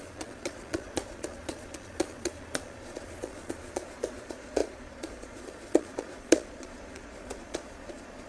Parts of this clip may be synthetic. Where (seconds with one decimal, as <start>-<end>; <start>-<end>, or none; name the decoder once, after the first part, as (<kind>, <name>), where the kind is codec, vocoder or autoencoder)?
0.0-8.3 (vocoder, Vocos)